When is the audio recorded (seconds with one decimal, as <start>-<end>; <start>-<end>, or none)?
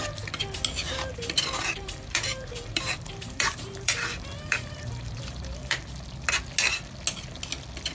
0.0-1.1; 5.8-7.9